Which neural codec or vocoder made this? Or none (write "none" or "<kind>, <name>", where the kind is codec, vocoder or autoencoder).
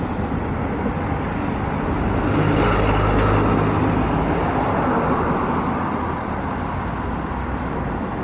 none